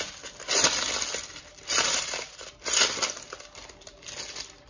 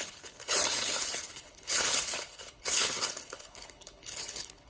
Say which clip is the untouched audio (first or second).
first